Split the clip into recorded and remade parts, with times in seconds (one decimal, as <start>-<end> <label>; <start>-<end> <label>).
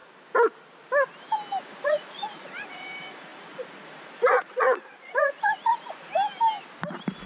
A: 0.0-1.6 recorded; 1.6-6.1 remade; 6.1-7.3 recorded